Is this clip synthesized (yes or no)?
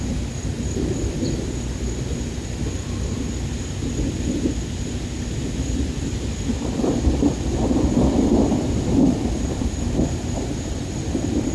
yes